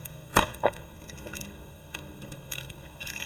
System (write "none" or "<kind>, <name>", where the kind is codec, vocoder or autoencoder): codec, SNAC